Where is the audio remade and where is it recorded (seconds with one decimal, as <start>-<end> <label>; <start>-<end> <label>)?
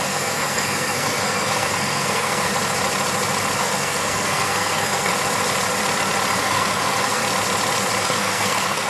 0.0-2.5 remade; 2.5-3.6 recorded; 3.6-5.1 remade; 5.1-6.4 recorded; 6.4-7.2 remade; 7.2-8.0 recorded; 8.0-8.9 remade